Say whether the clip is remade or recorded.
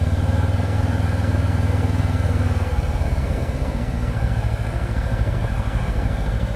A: remade